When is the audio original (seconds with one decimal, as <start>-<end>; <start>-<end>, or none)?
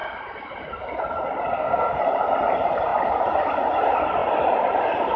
0.0-1.5; 2.0-5.2